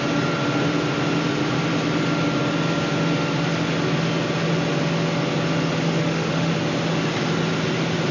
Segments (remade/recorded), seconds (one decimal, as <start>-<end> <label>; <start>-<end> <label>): 0.0-6.0 recorded; 6.0-6.5 remade; 6.5-8.1 recorded